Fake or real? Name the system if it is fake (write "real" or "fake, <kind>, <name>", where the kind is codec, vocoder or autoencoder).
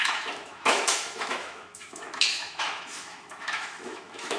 fake, autoencoder, DAC-VAE